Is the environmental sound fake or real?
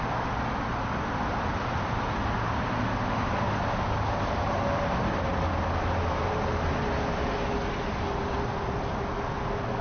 real